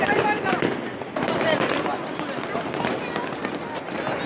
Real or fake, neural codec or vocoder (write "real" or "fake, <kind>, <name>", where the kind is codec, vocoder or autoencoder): real